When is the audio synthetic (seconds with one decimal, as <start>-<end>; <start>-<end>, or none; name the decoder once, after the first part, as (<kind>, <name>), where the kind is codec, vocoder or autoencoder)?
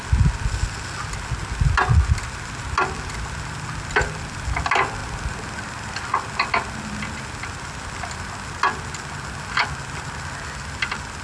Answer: none